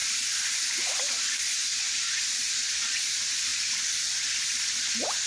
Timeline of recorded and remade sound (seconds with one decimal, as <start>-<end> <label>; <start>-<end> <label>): 0.0-5.3 recorded